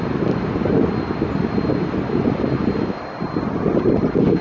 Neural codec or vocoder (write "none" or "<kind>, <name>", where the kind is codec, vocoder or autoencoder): none